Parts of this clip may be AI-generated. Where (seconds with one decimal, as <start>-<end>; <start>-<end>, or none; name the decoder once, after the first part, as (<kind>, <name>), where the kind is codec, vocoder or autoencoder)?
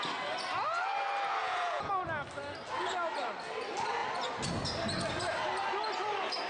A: 1.4-1.9 (vocoder, Vocos)